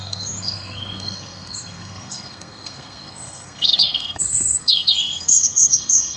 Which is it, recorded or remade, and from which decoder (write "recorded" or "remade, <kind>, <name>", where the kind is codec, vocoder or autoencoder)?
remade, codec, SNAC